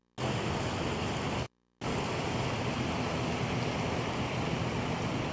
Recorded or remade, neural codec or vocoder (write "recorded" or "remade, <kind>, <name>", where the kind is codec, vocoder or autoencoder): recorded